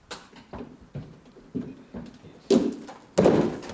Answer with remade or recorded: recorded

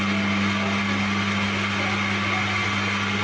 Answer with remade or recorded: recorded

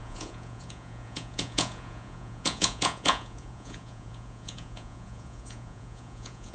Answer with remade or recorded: remade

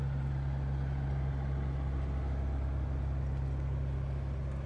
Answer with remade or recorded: recorded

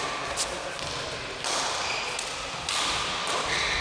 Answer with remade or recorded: recorded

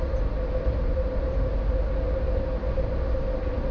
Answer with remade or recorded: recorded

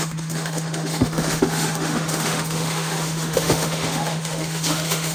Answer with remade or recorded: remade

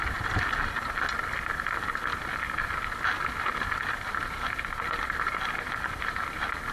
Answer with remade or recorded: recorded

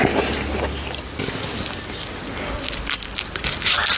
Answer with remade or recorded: recorded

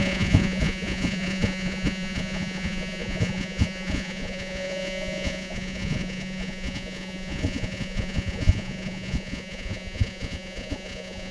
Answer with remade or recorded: remade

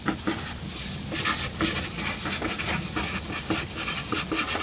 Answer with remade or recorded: recorded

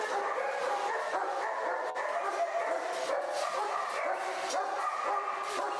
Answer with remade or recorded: recorded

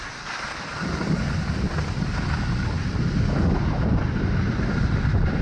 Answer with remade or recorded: recorded